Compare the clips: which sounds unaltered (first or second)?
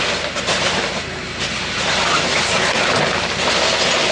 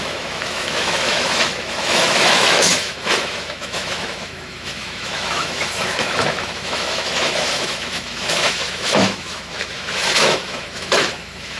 first